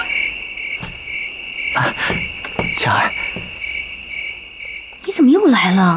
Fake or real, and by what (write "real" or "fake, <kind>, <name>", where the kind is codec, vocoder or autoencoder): real